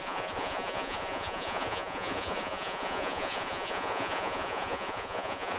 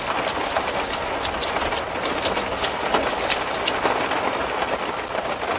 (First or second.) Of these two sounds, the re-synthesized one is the first